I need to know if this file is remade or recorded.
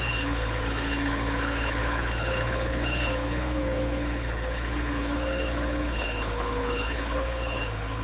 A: remade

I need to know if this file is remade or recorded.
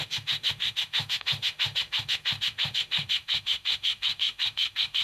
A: remade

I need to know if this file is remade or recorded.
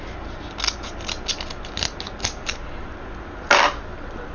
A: recorded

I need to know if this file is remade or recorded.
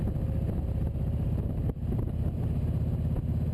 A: recorded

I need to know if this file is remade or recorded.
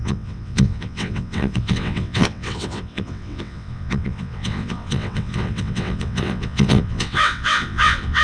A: remade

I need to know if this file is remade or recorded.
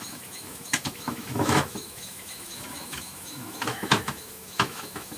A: remade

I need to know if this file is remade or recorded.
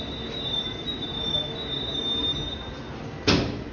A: recorded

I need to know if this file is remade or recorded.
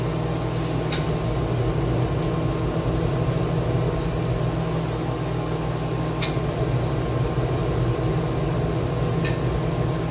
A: recorded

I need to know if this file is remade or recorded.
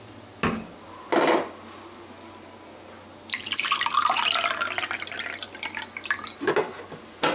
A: recorded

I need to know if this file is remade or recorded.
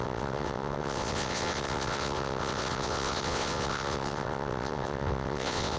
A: remade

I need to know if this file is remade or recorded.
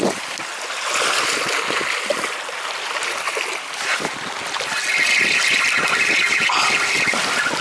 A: recorded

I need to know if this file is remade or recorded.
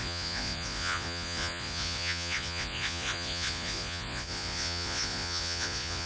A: remade